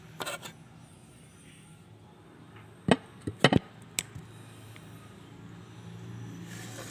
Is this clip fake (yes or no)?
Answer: no